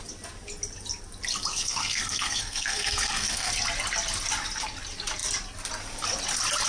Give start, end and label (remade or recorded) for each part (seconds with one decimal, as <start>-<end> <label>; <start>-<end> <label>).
0.0-1.5 recorded; 1.5-3.5 remade; 3.5-6.7 recorded